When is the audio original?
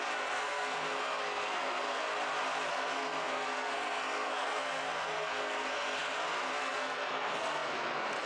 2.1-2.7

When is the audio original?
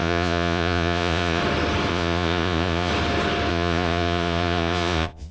1.4-1.9; 2.9-3.5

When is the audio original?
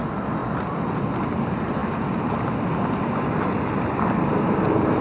0.0-5.0